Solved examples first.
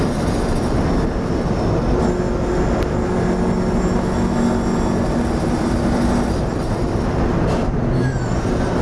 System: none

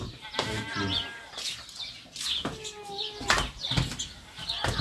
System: none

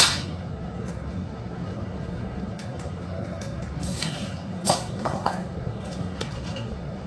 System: codec, SNAC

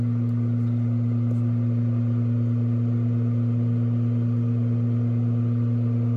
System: none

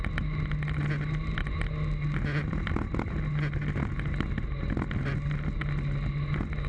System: none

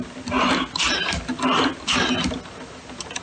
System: none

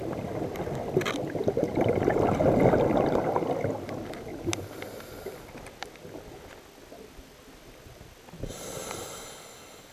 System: none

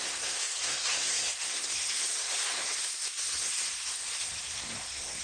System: codec, SNAC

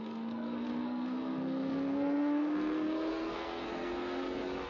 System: codec, SNAC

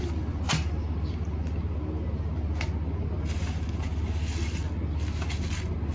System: none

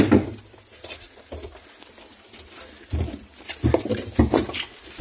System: none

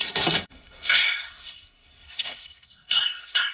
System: codec, SNAC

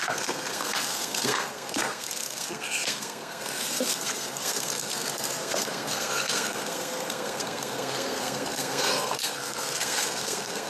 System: codec, SNAC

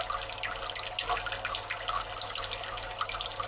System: none